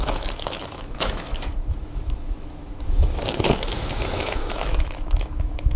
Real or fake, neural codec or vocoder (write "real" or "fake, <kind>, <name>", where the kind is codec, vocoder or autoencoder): fake, autoencoder, DAC-VAE